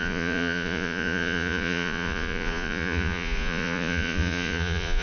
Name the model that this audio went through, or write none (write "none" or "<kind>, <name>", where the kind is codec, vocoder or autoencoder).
vocoder, Vocos